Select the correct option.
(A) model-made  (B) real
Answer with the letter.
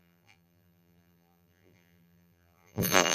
A